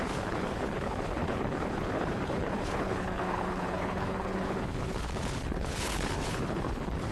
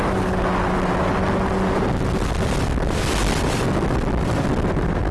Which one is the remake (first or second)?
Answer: first